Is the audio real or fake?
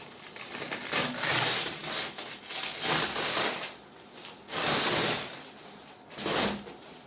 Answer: real